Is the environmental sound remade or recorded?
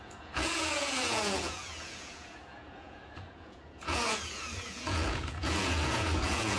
remade